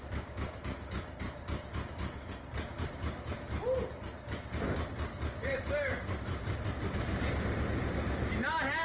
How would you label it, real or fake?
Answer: fake